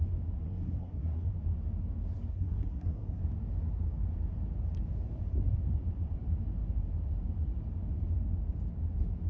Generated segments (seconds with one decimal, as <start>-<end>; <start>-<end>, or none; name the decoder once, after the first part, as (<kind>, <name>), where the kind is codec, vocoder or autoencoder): 0.4-1.3 (codec, SNAC); 2.3-3.2